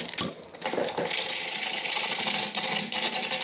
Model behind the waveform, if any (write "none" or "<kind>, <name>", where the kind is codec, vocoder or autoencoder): none